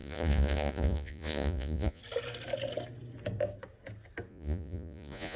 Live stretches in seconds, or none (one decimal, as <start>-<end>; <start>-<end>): 2.0-4.3